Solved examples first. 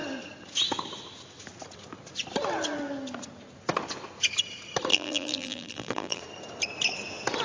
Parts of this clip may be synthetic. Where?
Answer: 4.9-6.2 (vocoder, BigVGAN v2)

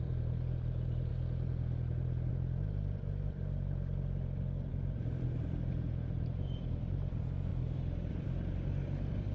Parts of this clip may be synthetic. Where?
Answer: 0.0-1.1 (vocoder, BigVGAN v2); 2.3-9.3

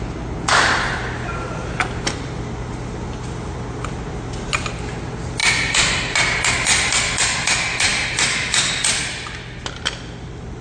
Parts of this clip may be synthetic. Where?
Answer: none

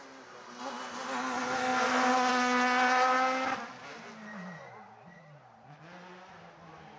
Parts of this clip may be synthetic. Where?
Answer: none

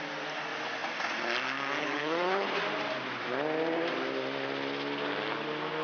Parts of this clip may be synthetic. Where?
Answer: 1.8-2.6 (codec, HILCodec)